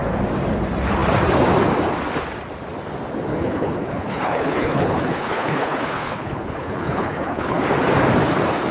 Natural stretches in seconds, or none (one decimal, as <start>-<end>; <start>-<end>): 0.0-3.3; 7.6-8.7